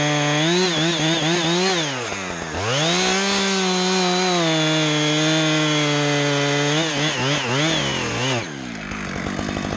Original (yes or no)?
yes